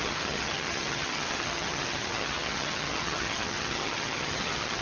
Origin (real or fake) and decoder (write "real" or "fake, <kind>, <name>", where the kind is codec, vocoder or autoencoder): fake, vocoder, HiFi-GAN